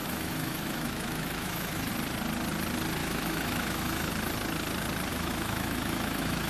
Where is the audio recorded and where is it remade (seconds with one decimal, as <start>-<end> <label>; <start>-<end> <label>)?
0.0-1.9 remade; 1.9-3.0 recorded; 3.0-4.1 remade; 4.1-5.1 recorded; 5.1-6.5 remade

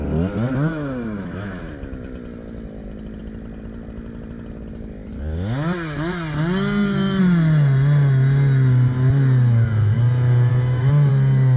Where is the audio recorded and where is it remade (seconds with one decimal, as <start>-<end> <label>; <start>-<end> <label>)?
0.0-0.7 recorded; 0.7-1.7 remade; 1.7-10.5 recorded; 10.5-11.1 remade; 11.1-11.6 recorded

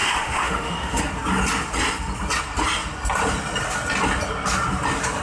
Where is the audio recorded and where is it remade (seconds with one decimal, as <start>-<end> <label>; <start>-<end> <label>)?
0.0-1.0 remade; 1.0-5.2 recorded

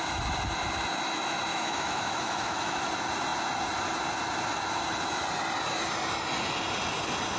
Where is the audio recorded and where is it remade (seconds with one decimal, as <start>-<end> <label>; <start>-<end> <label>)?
0.0-1.5 recorded; 1.5-2.9 remade; 2.9-7.4 recorded

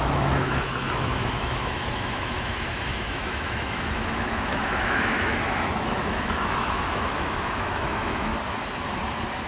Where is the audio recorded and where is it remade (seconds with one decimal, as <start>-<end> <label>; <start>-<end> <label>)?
0.0-8.3 remade; 8.3-9.5 recorded

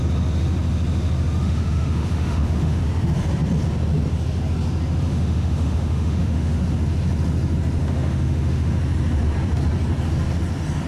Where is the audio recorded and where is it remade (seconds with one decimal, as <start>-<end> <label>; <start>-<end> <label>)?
0.0-1.4 recorded; 1.4-2.8 remade; 2.8-5.1 recorded; 5.1-6.6 remade; 6.6-7.8 recorded; 7.8-8.8 remade; 8.8-10.9 recorded

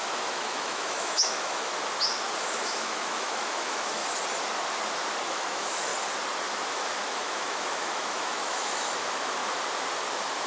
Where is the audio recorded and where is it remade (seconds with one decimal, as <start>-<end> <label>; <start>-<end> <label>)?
0.0-1.7 remade; 1.7-2.4 recorded; 2.4-4.0 remade; 4.0-5.2 recorded; 5.2-5.9 remade; 5.9-7.0 recorded; 7.0-9.4 remade; 9.4-10.5 recorded